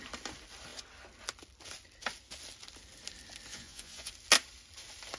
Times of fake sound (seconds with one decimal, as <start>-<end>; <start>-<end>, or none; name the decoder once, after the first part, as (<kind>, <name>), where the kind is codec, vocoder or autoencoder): 3.5-4.1 (vocoder, Vocos)